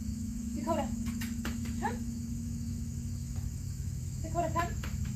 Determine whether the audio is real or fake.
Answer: fake